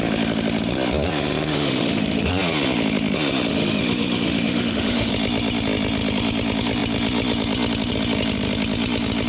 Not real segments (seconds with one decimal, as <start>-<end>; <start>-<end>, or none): 1.5-2.3; 3.5-5.1